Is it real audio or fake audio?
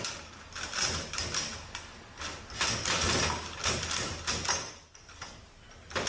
real